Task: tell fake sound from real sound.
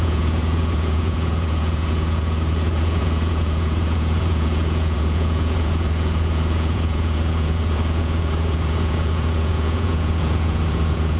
fake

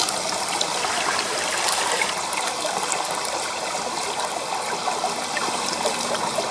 real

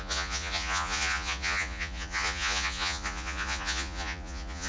fake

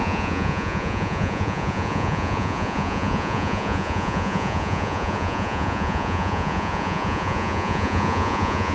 fake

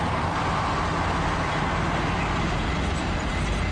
real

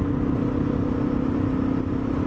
real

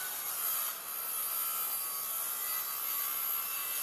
real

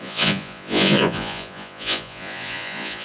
fake